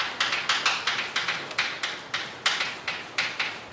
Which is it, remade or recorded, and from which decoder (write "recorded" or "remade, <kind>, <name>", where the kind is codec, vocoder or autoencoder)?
recorded